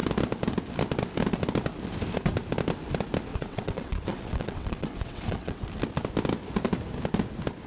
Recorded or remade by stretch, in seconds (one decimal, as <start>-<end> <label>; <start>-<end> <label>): 0.0-3.3 recorded; 3.3-5.7 remade; 5.7-7.7 recorded